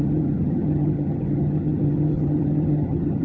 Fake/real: fake